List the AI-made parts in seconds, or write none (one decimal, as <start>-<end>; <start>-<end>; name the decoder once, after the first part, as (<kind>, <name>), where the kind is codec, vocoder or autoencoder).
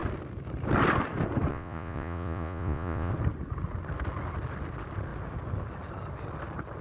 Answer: 1.5-3.1 (vocoder, Vocos)